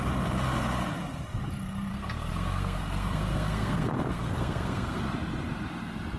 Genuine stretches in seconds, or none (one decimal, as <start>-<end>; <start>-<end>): 0.0-1.9; 5.0-6.2